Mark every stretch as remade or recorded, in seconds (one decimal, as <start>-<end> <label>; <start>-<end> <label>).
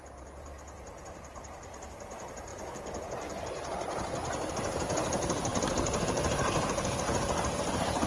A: 0.0-0.5 remade; 0.5-1.0 recorded; 1.0-2.5 remade; 2.5-4.5 recorded; 4.5-8.1 remade